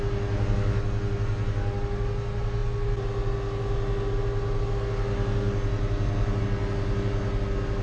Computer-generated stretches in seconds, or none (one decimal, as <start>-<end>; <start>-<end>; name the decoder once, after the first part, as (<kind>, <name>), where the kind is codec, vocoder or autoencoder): none